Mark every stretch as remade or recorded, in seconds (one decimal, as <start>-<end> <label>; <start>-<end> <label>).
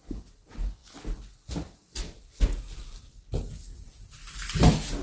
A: 0.0-5.0 recorded